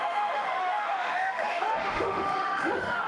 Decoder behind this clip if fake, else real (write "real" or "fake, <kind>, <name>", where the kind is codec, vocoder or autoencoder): fake, autoencoder, DAC-VAE